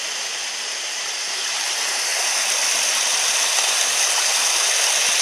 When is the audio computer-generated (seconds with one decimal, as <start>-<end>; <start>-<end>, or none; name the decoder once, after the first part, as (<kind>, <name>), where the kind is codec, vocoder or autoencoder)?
0.0-2.1 (vocoder, BigVGAN v2)